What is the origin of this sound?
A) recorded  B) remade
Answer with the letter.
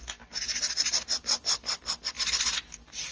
A